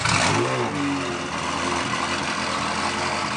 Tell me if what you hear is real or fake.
real